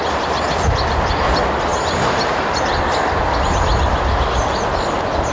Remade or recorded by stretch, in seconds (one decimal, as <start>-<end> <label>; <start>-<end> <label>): 0.0-5.3 recorded